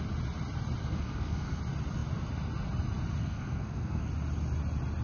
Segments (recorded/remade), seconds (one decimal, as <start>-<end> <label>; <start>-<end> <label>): 0.0-0.8 recorded; 0.8-1.6 remade; 1.6-3.2 recorded; 3.2-4.1 remade; 4.1-5.0 recorded